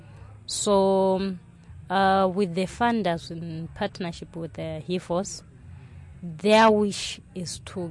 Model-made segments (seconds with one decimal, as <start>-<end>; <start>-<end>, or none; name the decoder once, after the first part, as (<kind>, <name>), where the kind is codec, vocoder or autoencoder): none